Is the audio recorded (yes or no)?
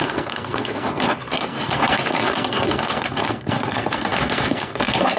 no